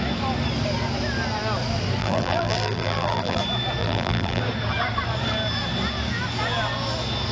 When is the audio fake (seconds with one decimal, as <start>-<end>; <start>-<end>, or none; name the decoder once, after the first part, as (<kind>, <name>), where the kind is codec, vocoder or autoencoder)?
2.0-3.4 (vocoder, BigVGAN v2); 3.8-4.4